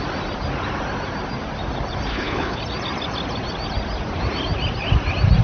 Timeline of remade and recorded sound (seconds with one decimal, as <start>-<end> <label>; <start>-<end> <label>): 0.0-2.1 recorded; 2.1-2.6 remade; 2.6-5.4 recorded